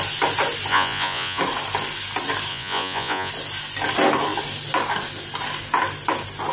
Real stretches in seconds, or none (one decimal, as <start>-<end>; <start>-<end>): 0.0-0.7; 1.4-2.5; 3.3-6.5